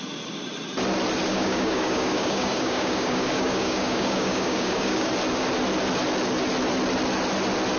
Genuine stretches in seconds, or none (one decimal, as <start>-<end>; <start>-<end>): 0.0-1.3; 5.1-7.8